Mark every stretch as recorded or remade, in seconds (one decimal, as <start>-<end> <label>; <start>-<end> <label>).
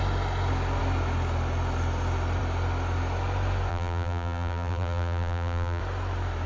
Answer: 0.0-3.7 recorded; 3.7-5.8 remade; 5.8-6.5 recorded